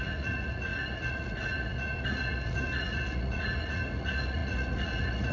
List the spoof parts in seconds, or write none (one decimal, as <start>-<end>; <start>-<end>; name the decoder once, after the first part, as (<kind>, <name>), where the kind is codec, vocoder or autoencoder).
0.0-5.3 (vocoder, Vocos)